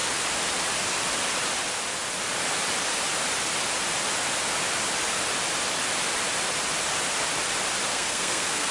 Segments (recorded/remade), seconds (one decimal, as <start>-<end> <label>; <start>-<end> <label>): 0.0-7.9 recorded; 7.9-8.7 remade